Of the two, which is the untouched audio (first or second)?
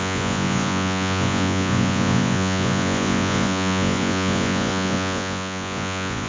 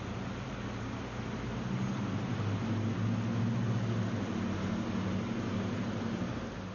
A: second